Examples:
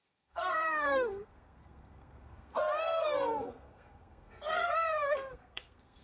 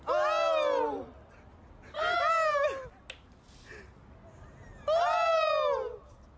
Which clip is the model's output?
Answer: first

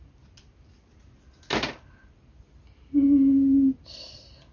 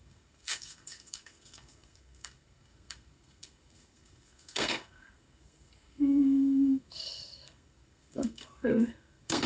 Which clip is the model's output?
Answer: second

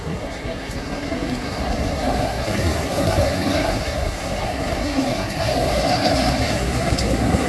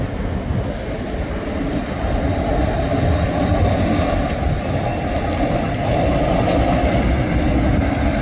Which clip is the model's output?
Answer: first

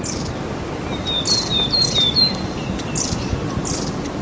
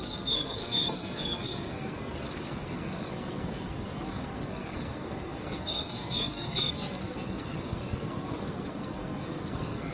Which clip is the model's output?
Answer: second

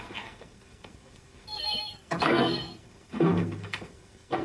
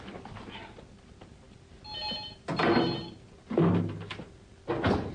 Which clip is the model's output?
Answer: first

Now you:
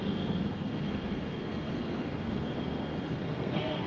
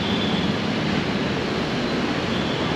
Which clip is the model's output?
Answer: first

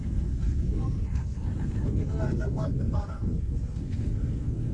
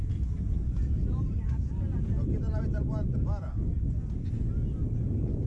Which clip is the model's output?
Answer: first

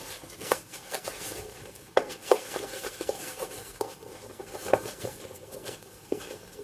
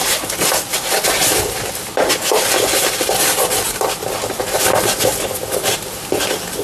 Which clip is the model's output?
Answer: first